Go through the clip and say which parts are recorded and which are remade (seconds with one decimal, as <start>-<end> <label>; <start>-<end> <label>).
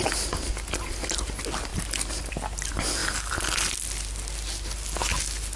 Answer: 0.0-3.0 recorded; 3.0-3.7 remade; 3.7-5.6 recorded